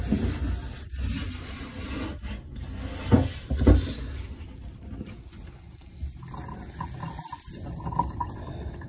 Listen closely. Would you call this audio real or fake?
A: real